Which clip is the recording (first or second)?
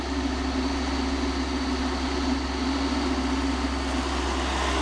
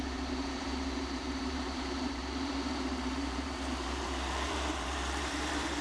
first